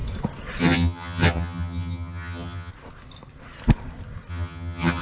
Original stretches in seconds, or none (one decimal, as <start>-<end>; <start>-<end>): 0.0-0.6; 2.7-4.3